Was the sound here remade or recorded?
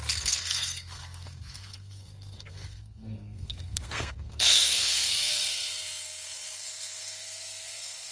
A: remade